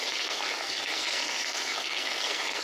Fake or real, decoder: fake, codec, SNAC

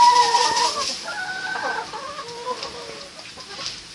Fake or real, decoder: real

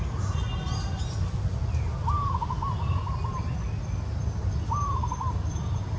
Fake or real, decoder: real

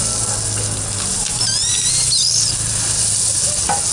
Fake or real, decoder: real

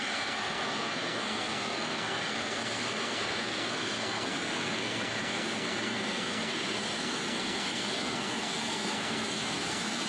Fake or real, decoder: fake, codec, SNAC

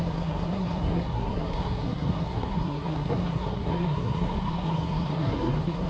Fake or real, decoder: fake, codec, SNAC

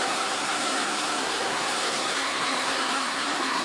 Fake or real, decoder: fake, codec, SNAC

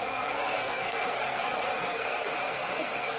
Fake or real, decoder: fake, codec, SNAC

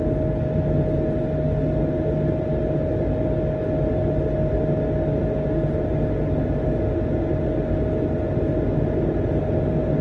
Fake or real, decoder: real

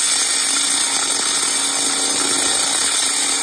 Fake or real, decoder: real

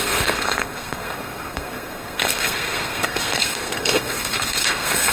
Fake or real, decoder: fake, codec, SNAC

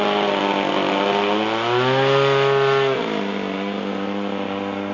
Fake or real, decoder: real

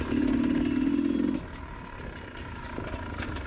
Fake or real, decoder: real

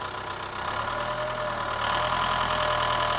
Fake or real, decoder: real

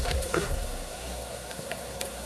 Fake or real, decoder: fake, codec, SNAC